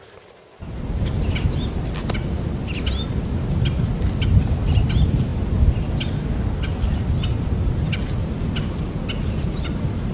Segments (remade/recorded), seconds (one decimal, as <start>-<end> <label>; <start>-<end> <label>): 0.0-10.1 recorded